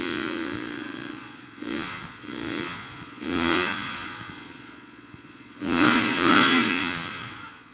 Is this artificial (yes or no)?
yes